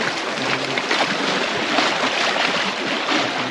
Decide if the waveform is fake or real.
real